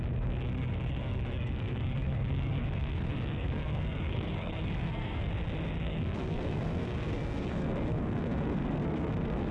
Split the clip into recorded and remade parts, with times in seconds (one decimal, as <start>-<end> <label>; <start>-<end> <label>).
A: 0.0-5.3 remade; 5.3-5.8 recorded; 5.8-9.5 remade